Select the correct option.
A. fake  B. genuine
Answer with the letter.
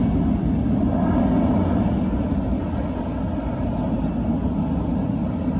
B